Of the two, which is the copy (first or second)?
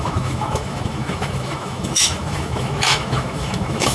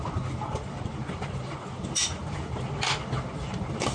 first